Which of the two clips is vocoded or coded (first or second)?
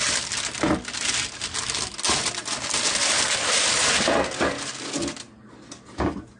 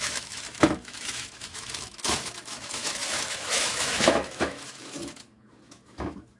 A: second